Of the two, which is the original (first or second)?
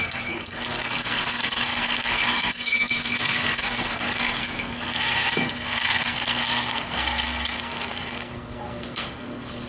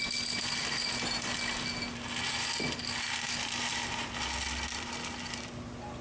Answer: second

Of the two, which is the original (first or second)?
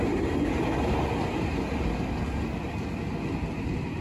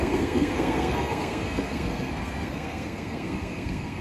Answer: first